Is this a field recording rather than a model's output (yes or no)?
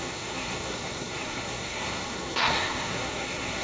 no